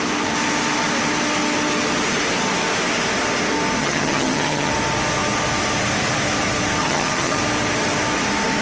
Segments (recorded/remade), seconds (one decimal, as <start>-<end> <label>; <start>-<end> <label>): 0.0-3.8 recorded; 3.8-4.7 remade; 4.7-6.8 recorded; 6.8-7.4 remade; 7.4-8.6 recorded